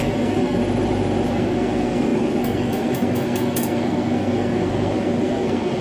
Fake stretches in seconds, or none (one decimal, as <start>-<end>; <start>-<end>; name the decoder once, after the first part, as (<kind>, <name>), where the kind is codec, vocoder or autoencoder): 0.0-0.6 (codec, SNAC); 1.3-5.8